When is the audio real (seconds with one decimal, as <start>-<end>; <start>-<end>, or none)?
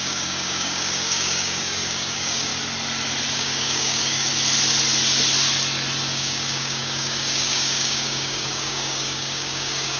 2.5-3.3; 4.3-6.2